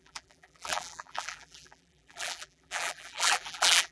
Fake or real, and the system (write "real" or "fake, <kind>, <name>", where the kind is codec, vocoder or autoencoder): fake, vocoder, BigVGAN v2